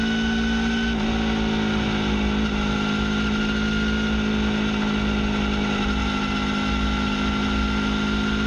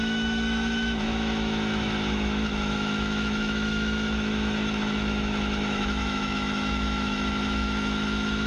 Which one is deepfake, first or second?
second